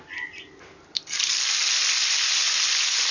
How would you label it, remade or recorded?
recorded